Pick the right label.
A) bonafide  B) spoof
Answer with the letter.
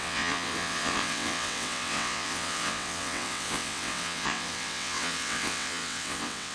B